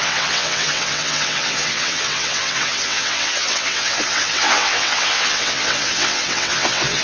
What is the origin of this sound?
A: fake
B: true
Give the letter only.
A